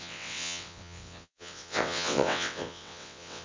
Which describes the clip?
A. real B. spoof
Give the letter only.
B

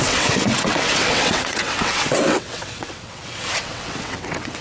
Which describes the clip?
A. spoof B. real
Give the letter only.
A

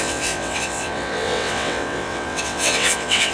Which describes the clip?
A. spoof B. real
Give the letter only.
A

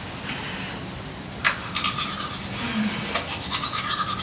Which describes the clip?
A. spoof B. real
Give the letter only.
B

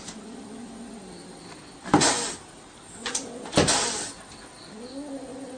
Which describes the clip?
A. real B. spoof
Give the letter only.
A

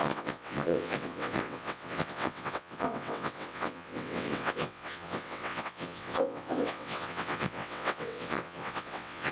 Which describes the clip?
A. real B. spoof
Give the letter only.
B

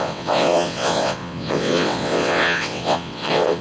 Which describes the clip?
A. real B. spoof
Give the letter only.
B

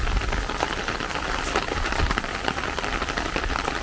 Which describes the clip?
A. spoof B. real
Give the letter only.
B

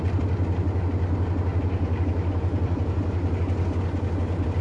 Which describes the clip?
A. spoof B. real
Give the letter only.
B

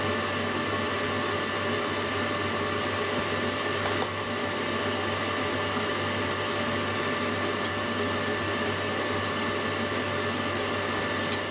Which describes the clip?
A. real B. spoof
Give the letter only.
A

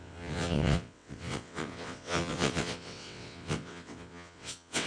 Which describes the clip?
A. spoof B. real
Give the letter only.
A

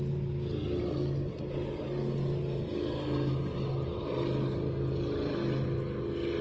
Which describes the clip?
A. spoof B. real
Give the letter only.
B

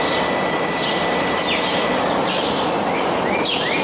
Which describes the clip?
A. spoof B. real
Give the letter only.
B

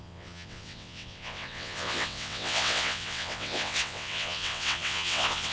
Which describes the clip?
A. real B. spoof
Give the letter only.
B